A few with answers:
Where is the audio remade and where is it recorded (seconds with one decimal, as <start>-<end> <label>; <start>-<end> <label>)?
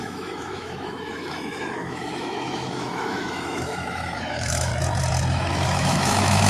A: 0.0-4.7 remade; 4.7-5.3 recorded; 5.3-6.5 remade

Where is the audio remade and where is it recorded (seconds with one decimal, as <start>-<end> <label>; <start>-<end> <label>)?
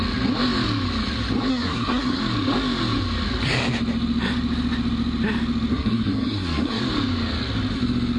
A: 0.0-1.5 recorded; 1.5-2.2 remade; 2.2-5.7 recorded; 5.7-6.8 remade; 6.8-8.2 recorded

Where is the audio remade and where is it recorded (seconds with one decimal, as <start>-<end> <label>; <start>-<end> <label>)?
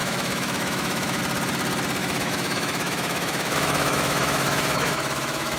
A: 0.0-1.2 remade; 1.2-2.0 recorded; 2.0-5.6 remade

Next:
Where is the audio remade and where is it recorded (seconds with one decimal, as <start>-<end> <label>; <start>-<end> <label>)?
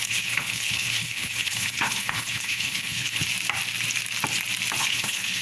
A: 0.0-3.2 remade; 3.2-4.8 recorded; 4.8-5.4 remade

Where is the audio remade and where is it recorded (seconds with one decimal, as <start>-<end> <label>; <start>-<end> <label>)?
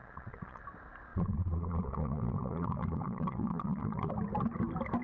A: 0.0-0.6 remade; 0.6-1.1 recorded; 1.1-4.1 remade; 4.1-5.0 recorded